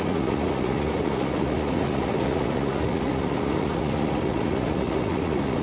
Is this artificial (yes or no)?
yes